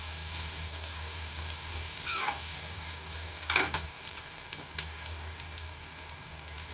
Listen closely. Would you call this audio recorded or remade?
remade